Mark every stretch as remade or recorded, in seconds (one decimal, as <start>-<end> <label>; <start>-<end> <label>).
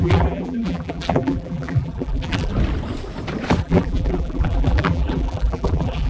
0.0-2.5 remade; 2.5-3.6 recorded; 3.6-6.1 remade